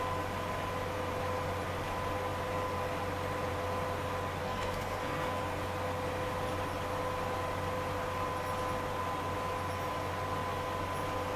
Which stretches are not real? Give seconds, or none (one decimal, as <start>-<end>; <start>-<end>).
4.4-5.4

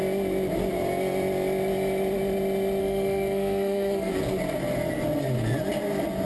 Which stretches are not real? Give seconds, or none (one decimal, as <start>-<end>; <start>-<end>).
2.8-4.1

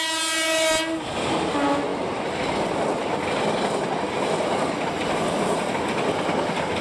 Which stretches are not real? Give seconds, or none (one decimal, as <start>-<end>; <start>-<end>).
none

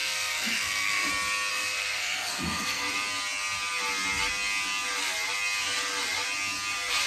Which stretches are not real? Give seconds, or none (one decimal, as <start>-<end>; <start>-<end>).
0.0-1.1; 1.5-2.9

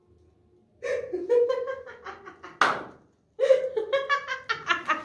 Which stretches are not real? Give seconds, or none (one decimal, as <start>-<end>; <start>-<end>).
none

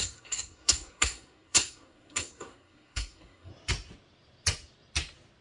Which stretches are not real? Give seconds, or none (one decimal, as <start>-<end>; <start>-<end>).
0.0-3.5

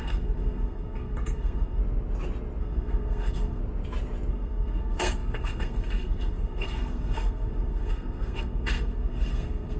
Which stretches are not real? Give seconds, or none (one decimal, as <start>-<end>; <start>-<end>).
0.0-1.8; 2.6-3.6; 4.3-9.8

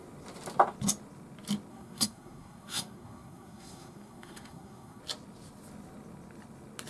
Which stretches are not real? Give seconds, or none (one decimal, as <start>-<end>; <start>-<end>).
1.7-5.0